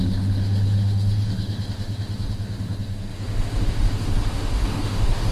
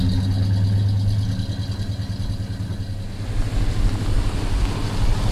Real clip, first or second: second